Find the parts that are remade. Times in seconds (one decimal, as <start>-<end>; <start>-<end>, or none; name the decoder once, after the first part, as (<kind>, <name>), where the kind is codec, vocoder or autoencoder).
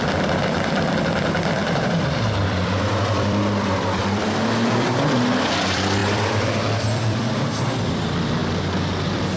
0.0-8.4 (vocoder, BigVGAN v2)